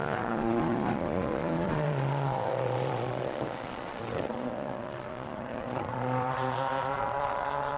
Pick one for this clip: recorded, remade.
remade